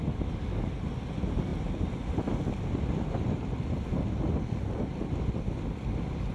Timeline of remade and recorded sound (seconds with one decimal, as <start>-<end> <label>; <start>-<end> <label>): 0.0-6.3 recorded